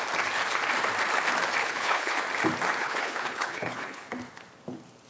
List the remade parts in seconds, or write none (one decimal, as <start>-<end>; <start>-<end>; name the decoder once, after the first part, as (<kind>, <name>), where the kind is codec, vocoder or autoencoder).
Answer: 1.6-2.2 (codec, HILCodec); 2.8-4.1